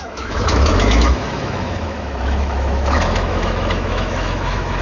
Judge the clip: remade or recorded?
remade